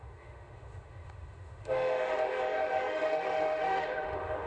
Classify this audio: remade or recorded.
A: remade